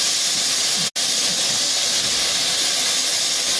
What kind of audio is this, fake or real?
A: real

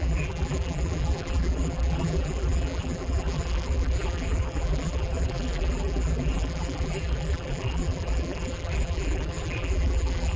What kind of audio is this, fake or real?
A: fake